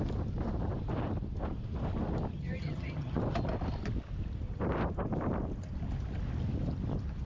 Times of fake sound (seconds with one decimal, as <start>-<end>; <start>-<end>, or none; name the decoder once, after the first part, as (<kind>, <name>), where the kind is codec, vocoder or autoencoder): 2.3-3.2 (vocoder, HiFi-GAN)